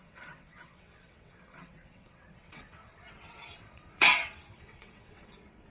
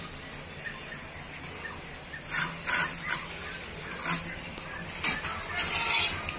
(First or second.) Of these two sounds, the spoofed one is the first